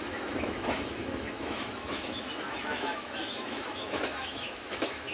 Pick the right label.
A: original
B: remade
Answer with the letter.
B